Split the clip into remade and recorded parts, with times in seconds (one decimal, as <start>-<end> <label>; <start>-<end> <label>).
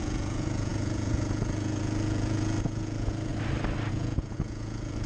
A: 0.0-3.3 remade; 3.3-3.9 recorded; 3.9-5.1 remade